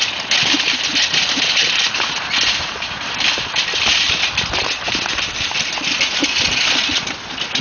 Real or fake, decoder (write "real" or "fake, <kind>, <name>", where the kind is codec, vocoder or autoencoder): fake, vocoder, BigVGAN v2